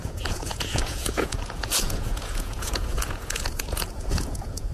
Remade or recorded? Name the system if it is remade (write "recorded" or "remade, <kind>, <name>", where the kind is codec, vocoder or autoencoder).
remade, vocoder, Vocos